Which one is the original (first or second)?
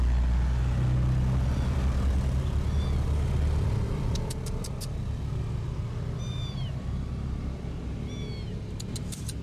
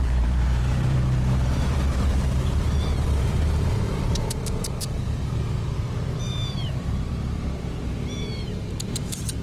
first